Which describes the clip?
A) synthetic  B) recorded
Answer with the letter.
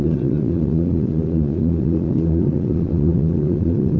A